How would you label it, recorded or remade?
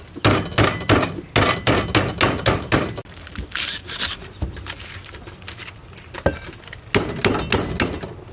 recorded